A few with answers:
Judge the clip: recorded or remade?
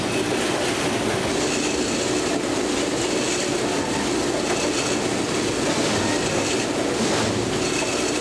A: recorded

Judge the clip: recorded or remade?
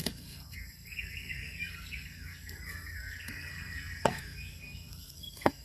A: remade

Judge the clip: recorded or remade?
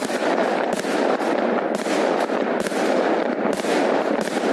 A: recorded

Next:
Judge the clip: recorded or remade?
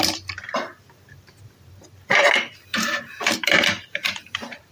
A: remade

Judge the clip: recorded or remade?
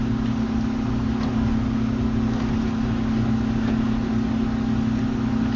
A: recorded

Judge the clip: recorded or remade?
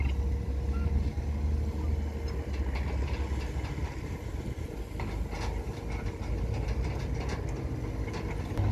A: recorded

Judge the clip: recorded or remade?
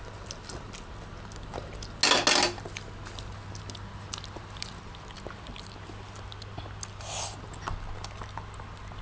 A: recorded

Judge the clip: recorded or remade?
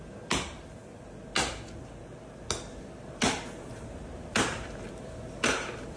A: recorded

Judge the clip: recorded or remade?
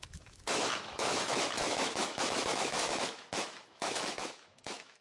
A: remade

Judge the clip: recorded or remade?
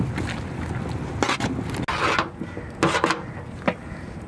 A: recorded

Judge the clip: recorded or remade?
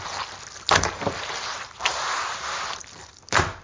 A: recorded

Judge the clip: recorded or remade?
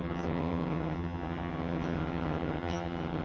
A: remade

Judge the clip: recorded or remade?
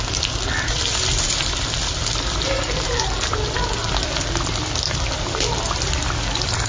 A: recorded